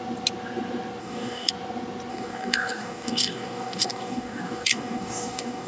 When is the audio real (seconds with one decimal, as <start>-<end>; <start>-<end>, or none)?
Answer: 0.0-1.0; 1.5-2.1